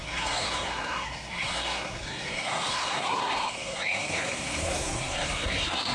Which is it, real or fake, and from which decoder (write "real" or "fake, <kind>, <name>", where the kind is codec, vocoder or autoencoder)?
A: fake, codec, SNAC